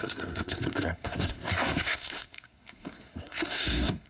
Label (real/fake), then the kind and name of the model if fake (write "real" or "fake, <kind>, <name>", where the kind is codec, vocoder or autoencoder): fake, codec, SNAC